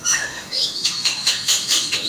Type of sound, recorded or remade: remade